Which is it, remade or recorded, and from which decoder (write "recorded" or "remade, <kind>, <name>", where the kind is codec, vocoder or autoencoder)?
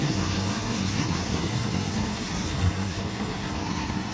remade, codec, SNAC